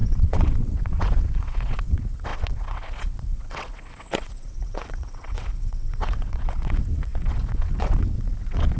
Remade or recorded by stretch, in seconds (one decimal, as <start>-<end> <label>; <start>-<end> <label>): 0.0-8.8 remade

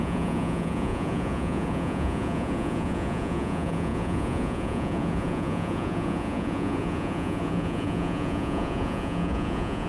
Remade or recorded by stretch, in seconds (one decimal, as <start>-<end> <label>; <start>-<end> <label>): 0.0-9.9 remade

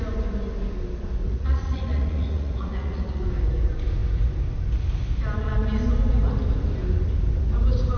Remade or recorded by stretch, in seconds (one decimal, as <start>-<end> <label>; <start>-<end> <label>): 0.0-1.2 recorded; 1.2-3.2 remade; 3.2-8.0 recorded

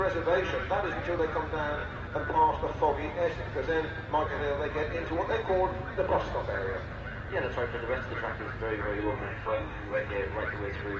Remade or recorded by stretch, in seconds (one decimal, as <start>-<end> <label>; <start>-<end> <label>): 0.0-9.0 recorded; 9.0-10.1 remade; 10.1-11.0 recorded

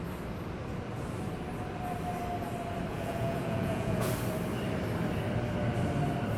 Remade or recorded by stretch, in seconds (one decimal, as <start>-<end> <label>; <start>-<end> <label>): 0.0-2.9 recorded; 2.9-4.1 remade; 4.1-6.4 recorded

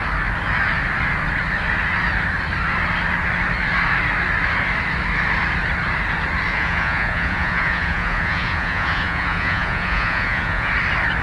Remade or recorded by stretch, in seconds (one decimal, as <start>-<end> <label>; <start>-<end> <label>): 0.0-6.5 recorded; 6.5-10.7 remade; 10.7-11.2 recorded